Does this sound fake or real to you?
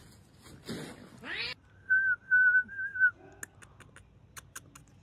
real